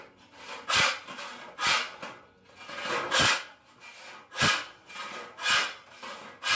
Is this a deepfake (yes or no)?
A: no